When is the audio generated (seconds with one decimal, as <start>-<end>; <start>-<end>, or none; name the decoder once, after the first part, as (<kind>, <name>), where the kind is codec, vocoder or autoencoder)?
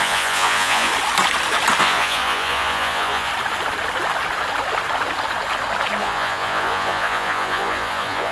0.0-0.9 (vocoder, Vocos); 1.8-3.3; 6.0-8.3